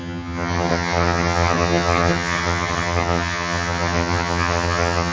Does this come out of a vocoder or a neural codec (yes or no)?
yes